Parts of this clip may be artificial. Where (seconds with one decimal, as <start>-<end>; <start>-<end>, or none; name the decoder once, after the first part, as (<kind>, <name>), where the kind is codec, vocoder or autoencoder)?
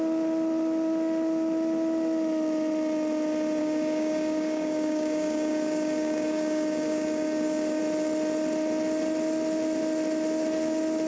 3.6-7.8 (codec, DAC)